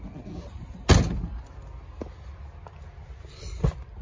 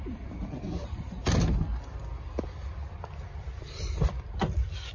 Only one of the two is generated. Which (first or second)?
second